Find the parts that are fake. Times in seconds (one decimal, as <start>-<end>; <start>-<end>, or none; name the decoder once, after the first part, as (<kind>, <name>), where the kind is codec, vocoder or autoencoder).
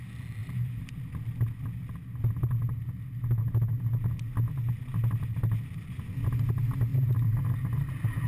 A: 0.4-1.0 (vocoder, BigVGAN v2)